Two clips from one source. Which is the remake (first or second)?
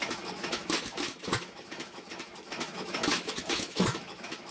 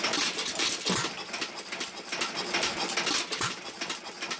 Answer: first